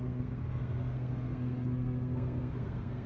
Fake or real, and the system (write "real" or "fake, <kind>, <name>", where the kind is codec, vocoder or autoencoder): fake, codec, SNAC